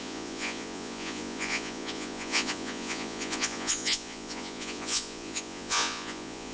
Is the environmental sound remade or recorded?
remade